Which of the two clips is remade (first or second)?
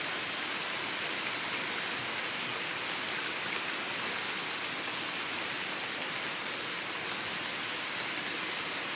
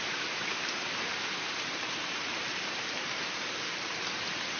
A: second